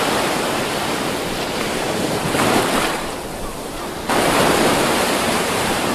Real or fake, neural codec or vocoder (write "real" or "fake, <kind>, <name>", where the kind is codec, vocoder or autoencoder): fake, vocoder, BigVGAN v2